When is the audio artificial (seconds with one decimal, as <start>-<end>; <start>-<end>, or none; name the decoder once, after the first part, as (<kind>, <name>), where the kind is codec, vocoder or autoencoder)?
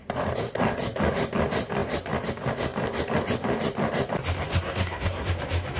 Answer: 4.4-5.3 (codec, SNAC)